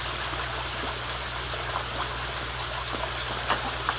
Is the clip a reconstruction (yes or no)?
no